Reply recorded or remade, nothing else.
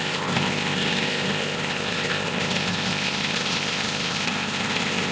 remade